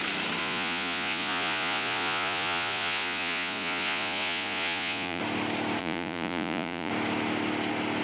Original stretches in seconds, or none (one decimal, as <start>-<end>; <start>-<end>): 0.0-0.4; 5.2-5.8; 6.9-8.0